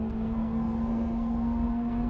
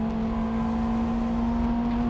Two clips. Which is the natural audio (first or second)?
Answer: second